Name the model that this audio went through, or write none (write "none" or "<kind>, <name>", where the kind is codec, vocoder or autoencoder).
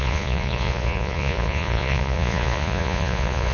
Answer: vocoder, Vocos